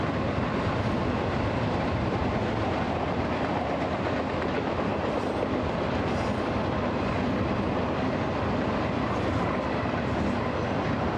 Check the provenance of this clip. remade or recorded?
recorded